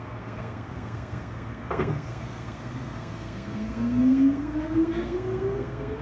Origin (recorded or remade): remade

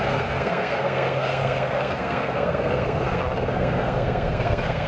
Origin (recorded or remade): remade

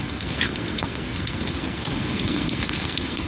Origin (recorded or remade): remade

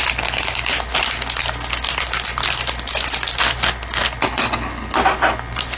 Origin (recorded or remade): recorded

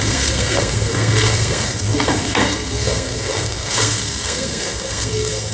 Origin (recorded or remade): remade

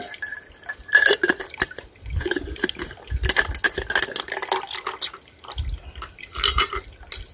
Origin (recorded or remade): recorded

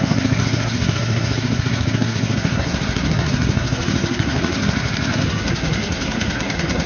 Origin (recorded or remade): remade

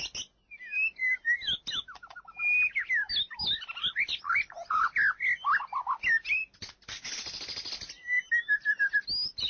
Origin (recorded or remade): recorded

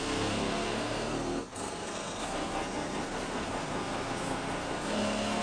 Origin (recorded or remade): remade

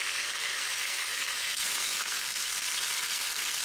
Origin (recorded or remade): remade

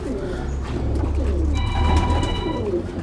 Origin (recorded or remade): recorded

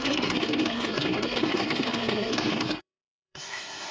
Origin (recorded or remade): remade